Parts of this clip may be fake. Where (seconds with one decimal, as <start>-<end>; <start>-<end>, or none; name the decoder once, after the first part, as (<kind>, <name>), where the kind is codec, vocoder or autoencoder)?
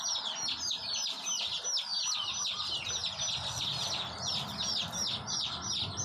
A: none